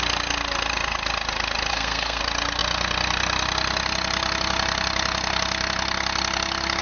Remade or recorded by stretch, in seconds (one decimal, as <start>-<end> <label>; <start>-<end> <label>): 0.0-1.7 recorded; 1.7-2.2 remade; 2.2-6.8 recorded